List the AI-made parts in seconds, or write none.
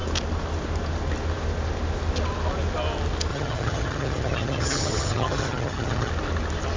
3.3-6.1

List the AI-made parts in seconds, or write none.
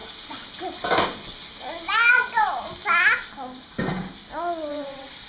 4.7-5.3